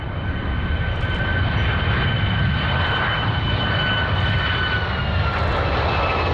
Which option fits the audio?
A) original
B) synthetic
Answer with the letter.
A